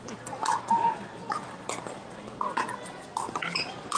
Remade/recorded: recorded